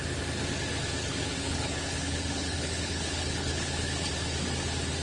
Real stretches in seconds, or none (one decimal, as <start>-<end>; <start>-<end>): 0.0-1.1; 4.1-5.0